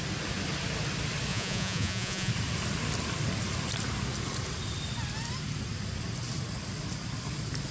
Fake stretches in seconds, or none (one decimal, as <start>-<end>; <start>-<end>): 1.3-2.3